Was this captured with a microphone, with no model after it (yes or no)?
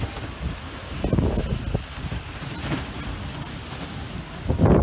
yes